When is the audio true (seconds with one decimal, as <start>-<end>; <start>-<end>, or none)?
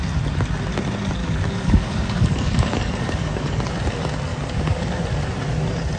0.0-1.2; 3.7-4.3; 5.0-6.0